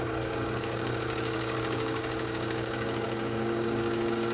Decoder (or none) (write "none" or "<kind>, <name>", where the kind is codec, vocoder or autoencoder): codec, DAC